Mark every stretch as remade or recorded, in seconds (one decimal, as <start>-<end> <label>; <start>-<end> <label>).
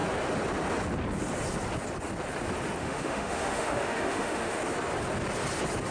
0.0-2.8 recorded; 2.8-4.6 remade; 4.6-5.9 recorded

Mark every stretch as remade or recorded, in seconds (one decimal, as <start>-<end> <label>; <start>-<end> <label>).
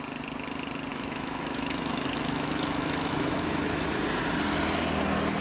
0.0-0.9 recorded; 0.9-3.9 remade; 3.9-5.4 recorded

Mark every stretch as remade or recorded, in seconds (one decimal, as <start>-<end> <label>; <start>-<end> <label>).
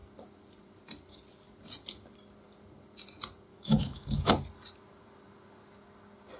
0.0-3.5 recorded; 3.5-4.3 remade; 4.3-6.4 recorded